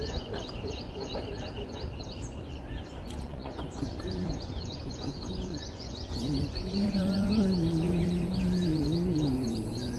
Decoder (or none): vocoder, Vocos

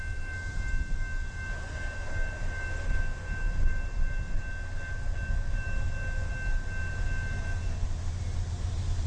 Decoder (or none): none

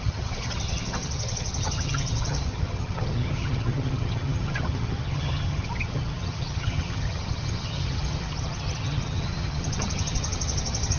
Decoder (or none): vocoder, HiFi-GAN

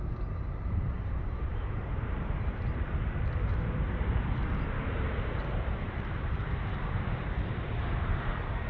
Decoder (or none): vocoder, BigVGAN v2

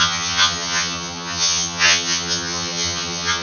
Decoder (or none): vocoder, HiFi-GAN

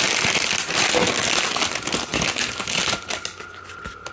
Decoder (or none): none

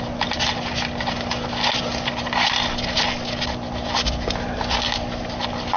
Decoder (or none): none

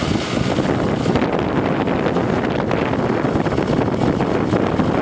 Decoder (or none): none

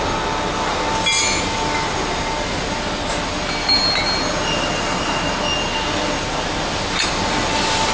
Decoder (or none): none